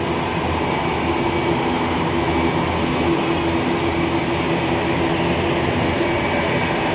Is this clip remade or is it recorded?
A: recorded